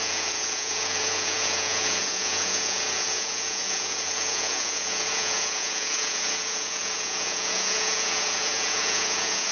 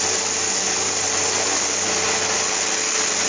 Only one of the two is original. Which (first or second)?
second